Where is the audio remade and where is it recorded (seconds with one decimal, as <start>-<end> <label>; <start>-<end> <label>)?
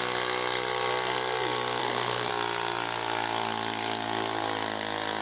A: 0.0-1.8 recorded; 1.8-2.3 remade; 2.3-5.2 recorded